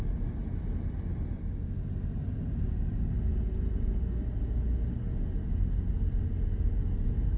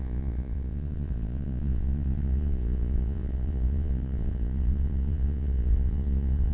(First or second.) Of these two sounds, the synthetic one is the second